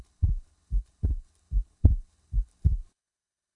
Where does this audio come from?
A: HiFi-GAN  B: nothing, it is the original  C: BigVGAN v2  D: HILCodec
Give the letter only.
D